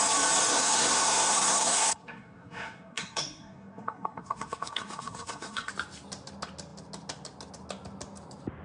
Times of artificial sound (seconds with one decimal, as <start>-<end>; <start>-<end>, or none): 0.5-5.7